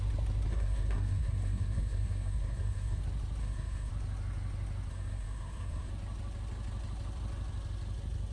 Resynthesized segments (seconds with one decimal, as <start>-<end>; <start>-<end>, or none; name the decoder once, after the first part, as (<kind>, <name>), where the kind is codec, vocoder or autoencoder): 0.5-3.0 (codec, SNAC); 3.4-3.9; 4.9-5.9